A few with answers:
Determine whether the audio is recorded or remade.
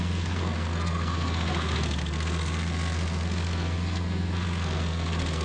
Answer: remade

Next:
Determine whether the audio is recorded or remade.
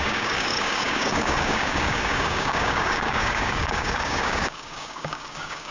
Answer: remade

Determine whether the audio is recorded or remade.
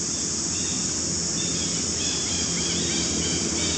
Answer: recorded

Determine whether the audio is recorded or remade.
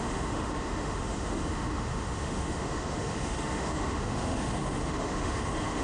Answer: remade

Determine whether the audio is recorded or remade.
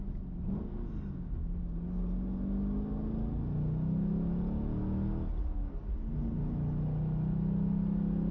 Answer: recorded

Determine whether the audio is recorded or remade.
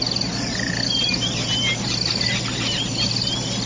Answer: recorded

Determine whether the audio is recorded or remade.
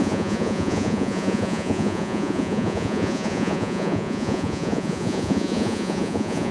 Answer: remade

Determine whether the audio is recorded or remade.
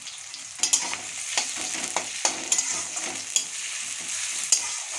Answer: recorded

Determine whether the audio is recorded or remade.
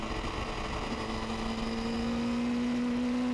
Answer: recorded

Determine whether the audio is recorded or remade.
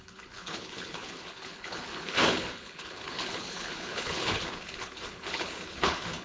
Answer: remade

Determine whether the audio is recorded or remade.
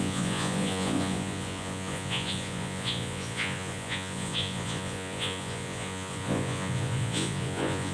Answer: remade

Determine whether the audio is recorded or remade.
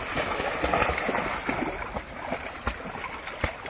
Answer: recorded